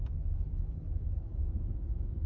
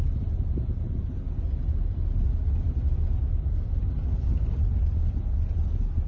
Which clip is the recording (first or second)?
second